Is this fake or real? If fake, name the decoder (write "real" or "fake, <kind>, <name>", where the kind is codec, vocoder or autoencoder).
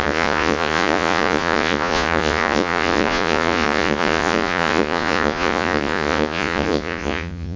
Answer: fake, vocoder, Vocos